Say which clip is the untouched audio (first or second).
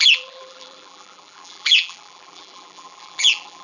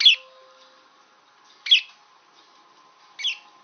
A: second